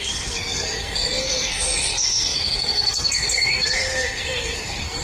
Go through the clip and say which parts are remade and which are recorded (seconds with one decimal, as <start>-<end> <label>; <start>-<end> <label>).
0.0-5.0 remade